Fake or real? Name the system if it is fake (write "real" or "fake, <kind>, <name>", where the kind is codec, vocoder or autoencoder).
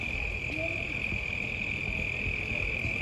real